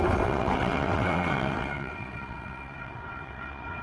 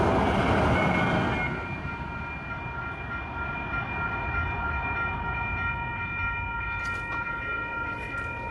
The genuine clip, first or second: second